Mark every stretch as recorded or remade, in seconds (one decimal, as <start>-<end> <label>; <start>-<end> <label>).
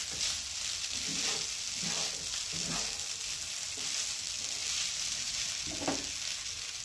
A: 0.0-4.6 recorded; 4.6-5.4 remade; 5.4-6.8 recorded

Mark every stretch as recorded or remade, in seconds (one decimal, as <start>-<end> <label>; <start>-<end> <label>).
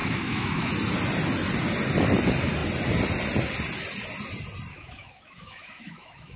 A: 0.0-0.7 remade; 0.7-4.7 recorded; 4.7-6.4 remade